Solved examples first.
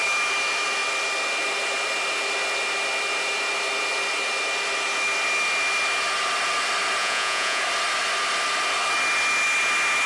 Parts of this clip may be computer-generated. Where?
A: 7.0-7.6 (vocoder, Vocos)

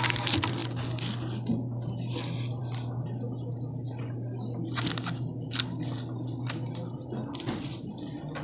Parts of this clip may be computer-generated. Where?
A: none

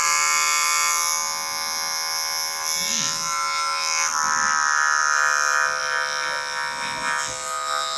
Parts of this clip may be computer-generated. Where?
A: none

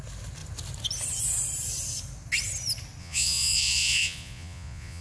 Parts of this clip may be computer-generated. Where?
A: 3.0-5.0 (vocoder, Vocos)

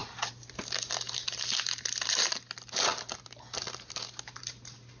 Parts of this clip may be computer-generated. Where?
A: none

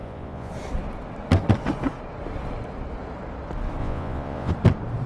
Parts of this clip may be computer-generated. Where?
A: 0.0-0.5 (vocoder, Vocos); 3.8-4.5